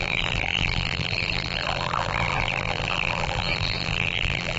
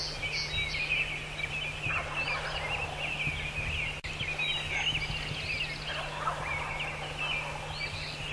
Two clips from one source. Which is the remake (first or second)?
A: first